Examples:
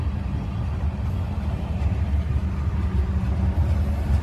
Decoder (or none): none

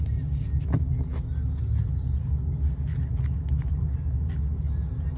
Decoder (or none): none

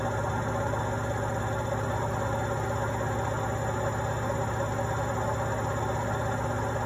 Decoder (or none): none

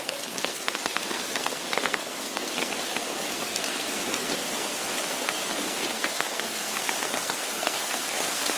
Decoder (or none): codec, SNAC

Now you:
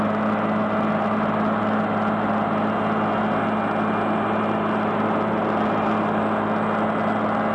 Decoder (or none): none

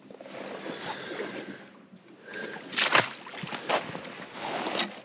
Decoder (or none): none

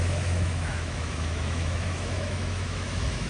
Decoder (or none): autoencoder, DAC-VAE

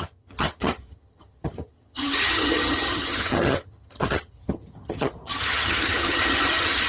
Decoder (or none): vocoder, HiFi-GAN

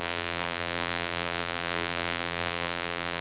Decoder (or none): vocoder, BigVGAN v2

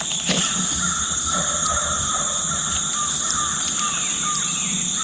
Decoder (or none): none